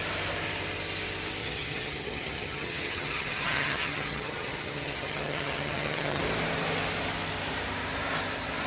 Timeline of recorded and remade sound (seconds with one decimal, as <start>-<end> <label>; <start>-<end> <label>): 0.0-1.4 recorded; 1.4-6.2 remade; 6.2-8.7 recorded